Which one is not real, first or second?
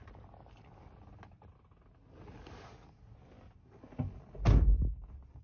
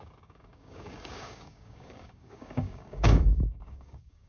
second